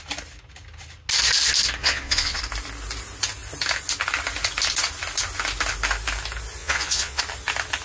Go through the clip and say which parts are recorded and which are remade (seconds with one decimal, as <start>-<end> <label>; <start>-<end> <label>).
0.0-1.8 recorded; 1.8-2.4 remade; 2.4-6.6 recorded; 6.6-7.2 remade; 7.2-7.8 recorded